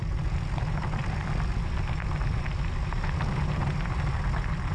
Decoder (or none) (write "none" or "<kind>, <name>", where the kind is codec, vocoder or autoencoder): none